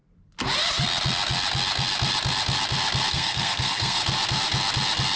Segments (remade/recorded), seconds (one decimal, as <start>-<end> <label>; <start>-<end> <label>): 0.0-3.1 recorded; 3.1-4.0 remade; 4.0-5.2 recorded